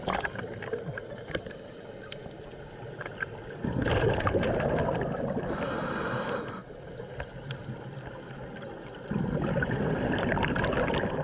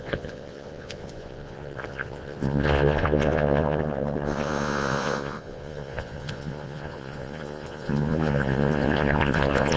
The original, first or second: first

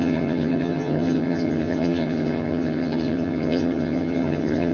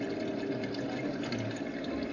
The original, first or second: second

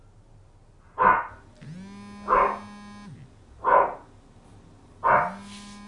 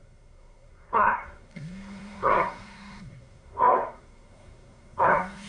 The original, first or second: first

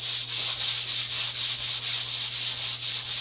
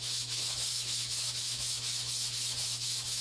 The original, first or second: first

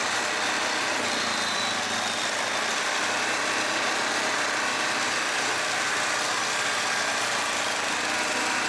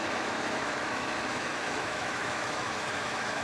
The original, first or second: first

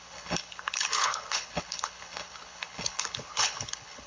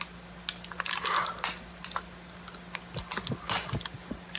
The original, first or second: second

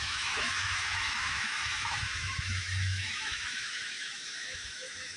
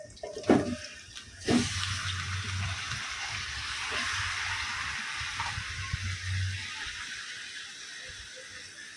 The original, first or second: second